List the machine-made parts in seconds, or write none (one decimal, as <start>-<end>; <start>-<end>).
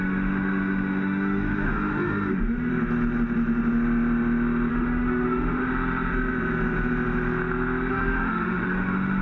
0.0-2.7; 4.7-5.7; 7.9-9.2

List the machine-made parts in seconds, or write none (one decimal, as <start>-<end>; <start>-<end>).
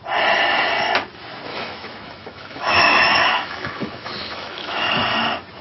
1.5-4.9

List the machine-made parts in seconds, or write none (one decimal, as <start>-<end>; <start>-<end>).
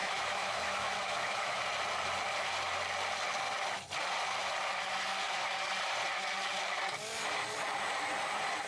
0.0-1.6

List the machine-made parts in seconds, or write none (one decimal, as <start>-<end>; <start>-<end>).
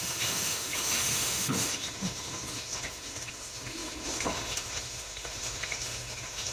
0.0-6.5